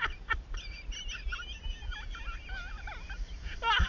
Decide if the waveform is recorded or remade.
recorded